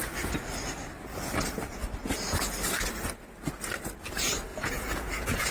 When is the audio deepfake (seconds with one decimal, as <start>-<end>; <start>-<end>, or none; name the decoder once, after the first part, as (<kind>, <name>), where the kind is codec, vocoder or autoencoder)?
4.5-5.5 (vocoder, Vocos)